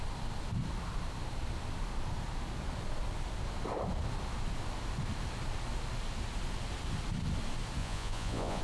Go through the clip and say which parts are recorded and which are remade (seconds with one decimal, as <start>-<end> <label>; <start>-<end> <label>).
0.0-7.8 recorded; 7.8-8.6 remade